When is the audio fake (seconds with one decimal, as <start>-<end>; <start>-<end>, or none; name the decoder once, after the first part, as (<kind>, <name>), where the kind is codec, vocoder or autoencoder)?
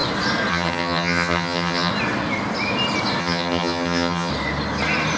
0.5-1.9 (vocoder, HiFi-GAN); 3.2-4.3